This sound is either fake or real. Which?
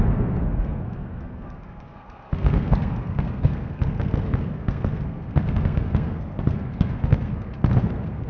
fake